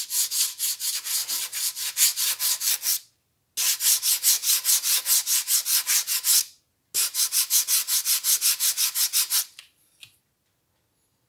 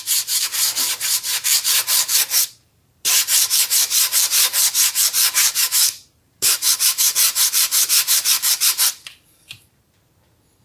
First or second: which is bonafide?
first